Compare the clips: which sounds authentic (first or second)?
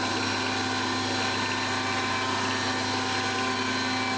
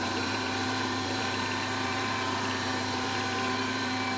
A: first